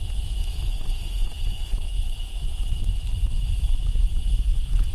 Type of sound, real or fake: fake